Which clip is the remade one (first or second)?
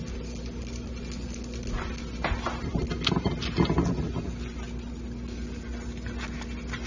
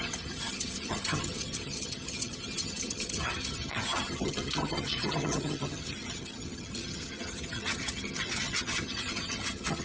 second